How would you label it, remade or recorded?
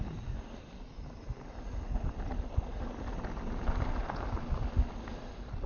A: recorded